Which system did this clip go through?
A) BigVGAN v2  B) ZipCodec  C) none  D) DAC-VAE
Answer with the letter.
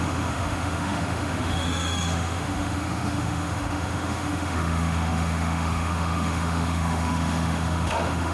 D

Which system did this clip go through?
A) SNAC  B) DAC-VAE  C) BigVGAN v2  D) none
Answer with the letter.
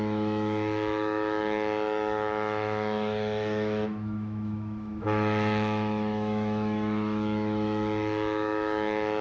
B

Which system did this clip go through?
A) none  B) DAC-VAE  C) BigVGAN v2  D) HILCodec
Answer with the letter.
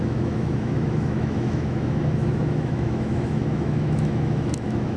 B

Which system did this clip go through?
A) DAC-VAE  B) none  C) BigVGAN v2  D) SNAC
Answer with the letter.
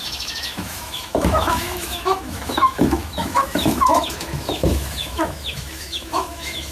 A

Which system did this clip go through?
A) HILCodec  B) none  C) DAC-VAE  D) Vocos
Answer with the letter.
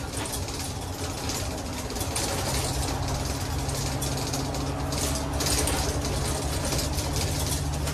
B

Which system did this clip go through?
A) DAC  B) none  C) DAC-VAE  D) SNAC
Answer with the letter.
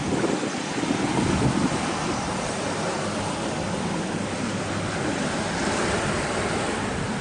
B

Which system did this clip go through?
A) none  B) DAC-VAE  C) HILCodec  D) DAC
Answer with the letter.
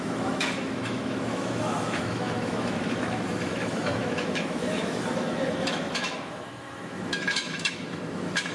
B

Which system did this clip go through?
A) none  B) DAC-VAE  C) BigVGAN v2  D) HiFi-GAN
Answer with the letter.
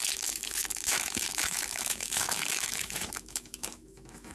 B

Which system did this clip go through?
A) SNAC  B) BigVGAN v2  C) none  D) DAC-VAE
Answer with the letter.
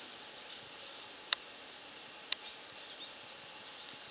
C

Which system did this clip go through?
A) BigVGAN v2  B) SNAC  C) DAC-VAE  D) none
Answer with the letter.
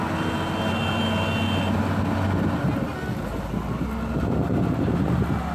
D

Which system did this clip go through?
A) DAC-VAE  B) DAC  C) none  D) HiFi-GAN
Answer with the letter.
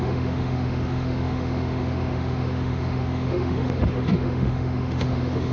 A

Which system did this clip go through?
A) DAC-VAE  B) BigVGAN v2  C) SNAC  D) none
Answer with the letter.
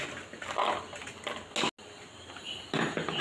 D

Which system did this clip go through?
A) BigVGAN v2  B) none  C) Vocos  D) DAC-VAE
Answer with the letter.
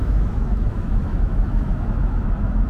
D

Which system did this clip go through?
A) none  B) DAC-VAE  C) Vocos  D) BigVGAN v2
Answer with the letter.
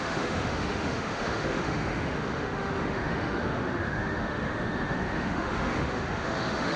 B